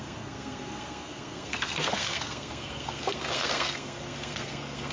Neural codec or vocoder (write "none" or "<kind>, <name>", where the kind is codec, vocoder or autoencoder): codec, SNAC